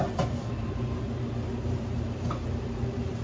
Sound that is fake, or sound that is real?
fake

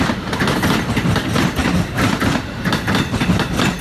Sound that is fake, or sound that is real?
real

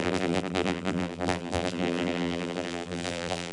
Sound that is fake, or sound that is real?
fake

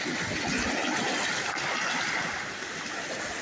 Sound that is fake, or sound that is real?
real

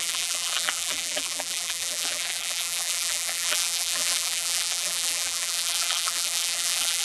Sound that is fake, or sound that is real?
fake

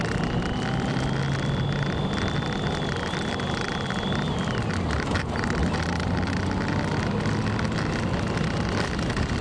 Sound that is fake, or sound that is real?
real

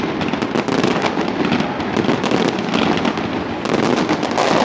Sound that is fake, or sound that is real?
real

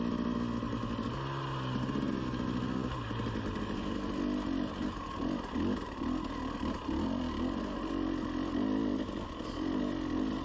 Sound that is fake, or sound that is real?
real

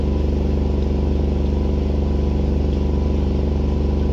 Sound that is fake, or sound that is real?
fake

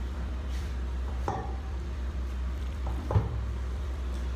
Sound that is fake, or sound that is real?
fake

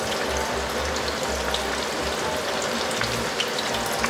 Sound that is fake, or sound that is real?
real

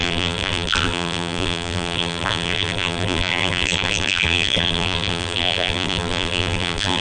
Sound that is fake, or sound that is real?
fake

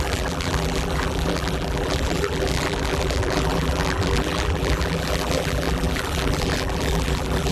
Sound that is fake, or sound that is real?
fake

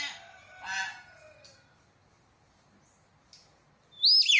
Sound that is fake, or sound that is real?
real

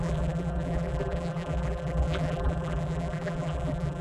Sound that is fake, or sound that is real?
fake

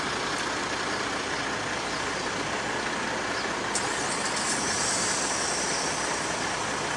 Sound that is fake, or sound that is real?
real